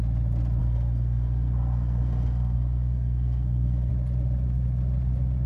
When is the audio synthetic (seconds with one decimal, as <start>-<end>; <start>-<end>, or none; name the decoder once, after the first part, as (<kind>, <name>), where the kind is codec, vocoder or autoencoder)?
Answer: 0.6-3.9 (codec, SNAC)